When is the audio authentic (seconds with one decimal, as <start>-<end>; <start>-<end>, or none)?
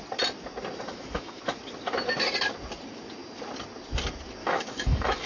0.0-0.9; 1.4-4.4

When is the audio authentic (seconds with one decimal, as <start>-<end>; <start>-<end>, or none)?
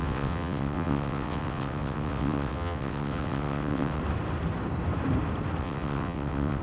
4.0-5.6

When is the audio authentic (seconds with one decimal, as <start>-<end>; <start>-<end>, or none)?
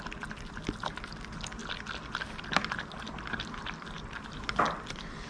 0.0-5.3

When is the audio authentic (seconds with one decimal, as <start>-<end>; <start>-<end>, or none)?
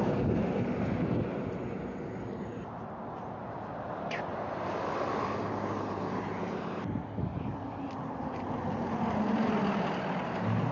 0.0-10.7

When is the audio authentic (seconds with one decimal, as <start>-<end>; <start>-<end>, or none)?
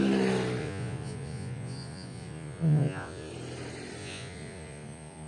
0.0-0.6; 3.3-4.0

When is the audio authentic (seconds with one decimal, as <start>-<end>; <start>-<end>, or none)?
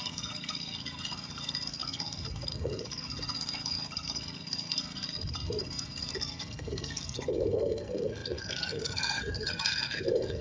none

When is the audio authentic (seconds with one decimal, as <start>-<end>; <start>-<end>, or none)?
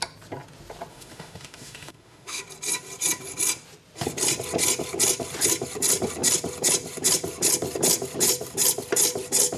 0.0-0.9; 2.4-9.6